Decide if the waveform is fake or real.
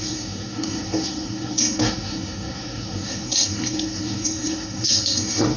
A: fake